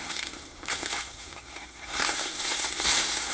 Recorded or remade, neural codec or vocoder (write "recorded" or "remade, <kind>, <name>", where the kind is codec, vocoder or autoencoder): remade, codec, SNAC